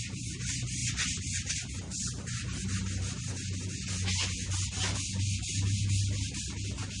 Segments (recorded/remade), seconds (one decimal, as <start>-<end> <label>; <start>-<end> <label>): 0.0-7.0 recorded